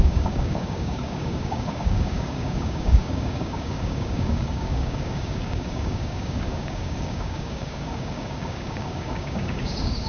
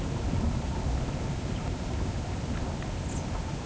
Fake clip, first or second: first